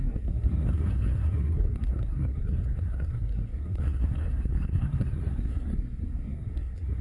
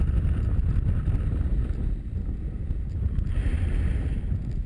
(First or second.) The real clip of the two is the second